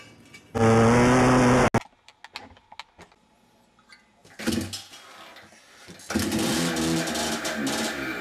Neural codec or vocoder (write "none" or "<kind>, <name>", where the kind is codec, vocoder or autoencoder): none